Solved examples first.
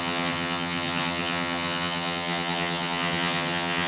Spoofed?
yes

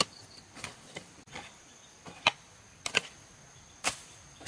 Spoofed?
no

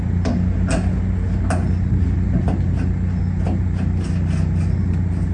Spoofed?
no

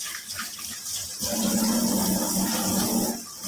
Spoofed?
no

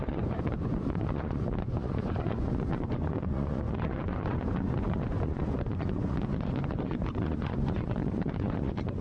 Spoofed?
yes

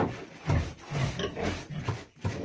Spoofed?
no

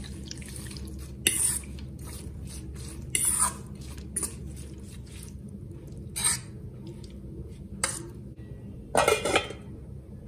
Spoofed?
no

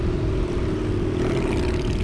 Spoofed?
no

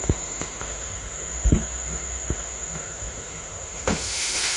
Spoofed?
yes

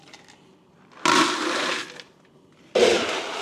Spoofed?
no